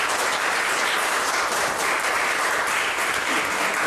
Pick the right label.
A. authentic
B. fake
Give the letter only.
A